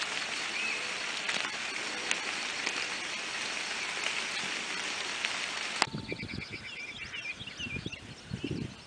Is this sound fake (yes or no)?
no